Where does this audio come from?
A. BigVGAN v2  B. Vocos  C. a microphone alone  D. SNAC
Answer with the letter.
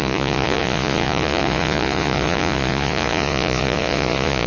B